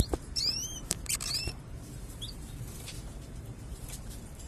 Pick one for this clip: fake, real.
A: fake